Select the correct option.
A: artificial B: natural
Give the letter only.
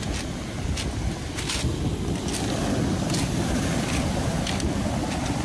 B